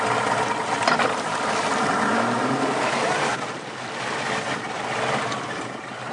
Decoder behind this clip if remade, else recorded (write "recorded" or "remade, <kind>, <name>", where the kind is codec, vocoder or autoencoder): recorded